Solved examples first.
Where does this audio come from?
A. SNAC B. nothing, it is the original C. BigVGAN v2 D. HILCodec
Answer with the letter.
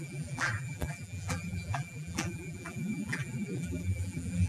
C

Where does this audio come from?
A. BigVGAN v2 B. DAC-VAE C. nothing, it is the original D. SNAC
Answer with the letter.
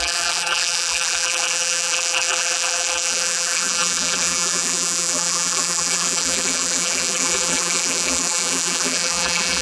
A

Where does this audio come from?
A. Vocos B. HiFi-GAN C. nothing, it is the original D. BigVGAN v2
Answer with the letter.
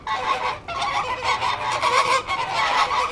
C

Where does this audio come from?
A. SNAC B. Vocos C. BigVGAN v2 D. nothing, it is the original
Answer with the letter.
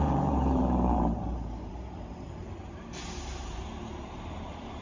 C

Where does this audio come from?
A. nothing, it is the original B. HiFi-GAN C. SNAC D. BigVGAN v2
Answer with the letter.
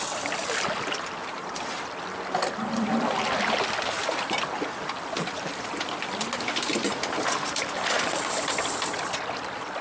A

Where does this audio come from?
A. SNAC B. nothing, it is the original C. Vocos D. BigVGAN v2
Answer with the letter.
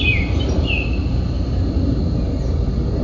B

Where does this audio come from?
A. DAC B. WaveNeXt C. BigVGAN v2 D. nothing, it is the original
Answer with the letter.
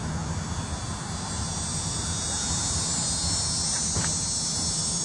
C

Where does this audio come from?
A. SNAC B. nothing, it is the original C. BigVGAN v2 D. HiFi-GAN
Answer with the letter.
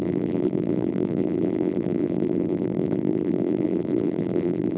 C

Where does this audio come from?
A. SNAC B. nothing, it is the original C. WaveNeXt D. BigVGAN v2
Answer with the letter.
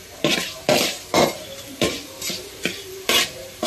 D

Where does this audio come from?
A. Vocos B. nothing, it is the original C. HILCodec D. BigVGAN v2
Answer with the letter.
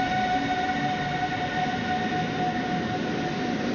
B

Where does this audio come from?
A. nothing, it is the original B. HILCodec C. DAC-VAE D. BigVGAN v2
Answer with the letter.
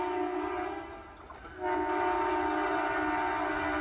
A